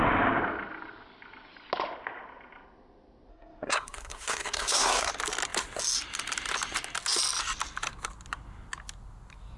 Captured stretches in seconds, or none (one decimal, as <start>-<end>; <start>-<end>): 0.0-3.3; 5.1-9.6